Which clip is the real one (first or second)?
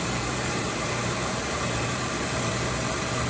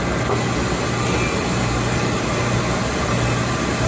second